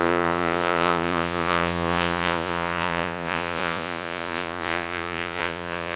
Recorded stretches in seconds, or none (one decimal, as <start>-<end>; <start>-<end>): none